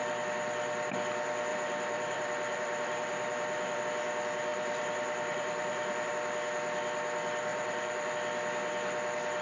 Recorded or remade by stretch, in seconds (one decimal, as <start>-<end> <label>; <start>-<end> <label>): 0.0-1.5 recorded; 1.5-3.8 remade; 3.8-4.5 recorded; 4.5-6.1 remade; 6.1-7.5 recorded; 7.5-8.1 remade; 8.1-9.4 recorded